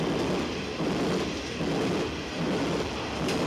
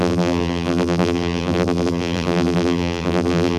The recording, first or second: first